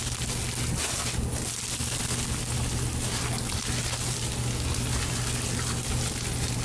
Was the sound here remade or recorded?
recorded